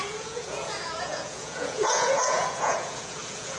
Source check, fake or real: fake